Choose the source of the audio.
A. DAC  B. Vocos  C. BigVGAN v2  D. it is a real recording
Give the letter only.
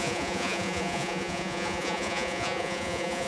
B